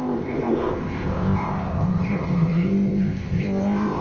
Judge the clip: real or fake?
fake